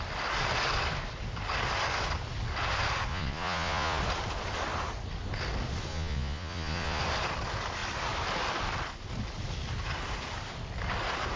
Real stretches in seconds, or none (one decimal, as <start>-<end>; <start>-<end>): 0.0-3.1; 4.0-5.9; 7.0-11.4